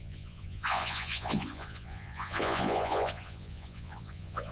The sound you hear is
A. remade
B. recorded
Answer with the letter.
A